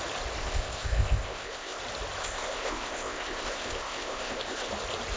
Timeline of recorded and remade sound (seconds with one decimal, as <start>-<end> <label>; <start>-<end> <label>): 0.0-0.4 recorded; 0.4-1.8 remade; 1.8-2.2 recorded; 2.2-4.7 remade; 4.7-5.2 recorded